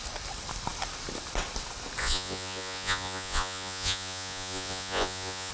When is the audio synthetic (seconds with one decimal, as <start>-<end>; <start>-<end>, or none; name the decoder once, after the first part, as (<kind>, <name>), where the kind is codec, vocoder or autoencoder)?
2.0-5.5 (vocoder, Vocos)